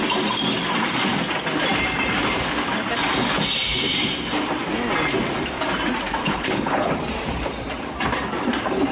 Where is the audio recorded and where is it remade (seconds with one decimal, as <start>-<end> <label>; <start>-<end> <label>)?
0.0-6.2 recorded; 6.2-6.9 remade; 6.9-8.9 recorded